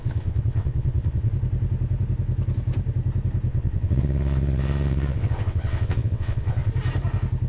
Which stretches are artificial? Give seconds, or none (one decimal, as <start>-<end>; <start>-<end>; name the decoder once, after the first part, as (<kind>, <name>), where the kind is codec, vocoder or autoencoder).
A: 0.0-1.3 (vocoder, WaveNeXt); 3.5-6.7